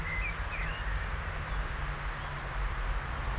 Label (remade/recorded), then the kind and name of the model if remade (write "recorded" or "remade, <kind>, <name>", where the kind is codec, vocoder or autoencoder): recorded